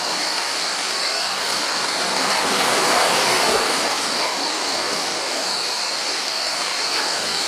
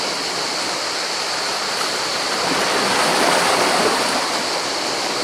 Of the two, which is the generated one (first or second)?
first